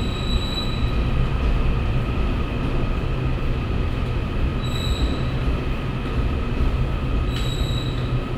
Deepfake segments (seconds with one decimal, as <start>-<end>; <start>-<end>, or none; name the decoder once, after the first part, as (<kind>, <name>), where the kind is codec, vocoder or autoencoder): none

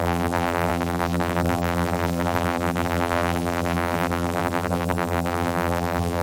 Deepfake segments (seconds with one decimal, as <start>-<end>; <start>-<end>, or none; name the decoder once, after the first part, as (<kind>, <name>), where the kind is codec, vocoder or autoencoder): 0.0-6.2 (vocoder, BigVGAN v2)

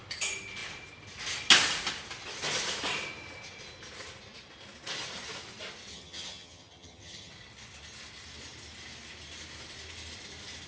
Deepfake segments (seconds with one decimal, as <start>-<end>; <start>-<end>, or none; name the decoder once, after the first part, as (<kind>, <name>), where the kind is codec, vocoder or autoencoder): 5.9-7.3 (vocoder, HiFi-GAN)

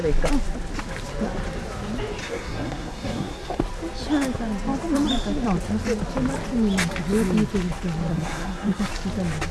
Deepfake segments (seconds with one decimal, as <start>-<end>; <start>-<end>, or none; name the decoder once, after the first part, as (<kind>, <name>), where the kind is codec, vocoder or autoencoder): 2.2-3.6 (codec, SNAC); 8.1-8.9